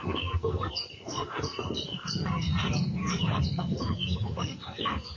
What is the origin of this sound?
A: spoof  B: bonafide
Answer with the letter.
A